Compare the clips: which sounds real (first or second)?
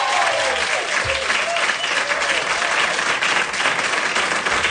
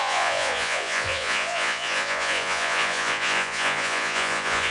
first